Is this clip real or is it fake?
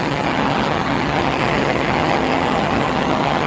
fake